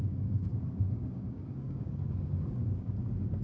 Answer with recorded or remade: remade